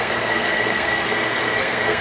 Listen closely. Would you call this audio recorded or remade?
remade